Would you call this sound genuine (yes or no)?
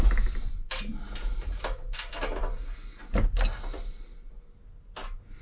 yes